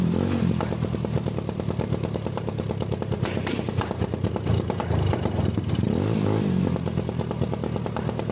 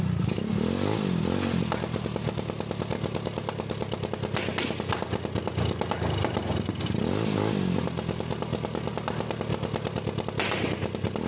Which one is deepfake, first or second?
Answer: first